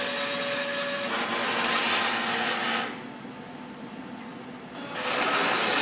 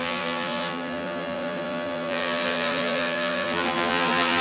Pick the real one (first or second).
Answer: first